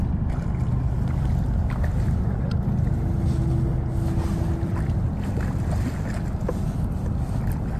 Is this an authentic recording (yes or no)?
yes